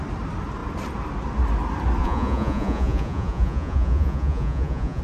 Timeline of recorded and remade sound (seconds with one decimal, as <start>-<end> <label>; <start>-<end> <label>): 0.0-2.0 recorded; 2.0-5.0 remade